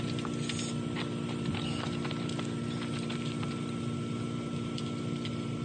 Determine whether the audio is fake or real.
real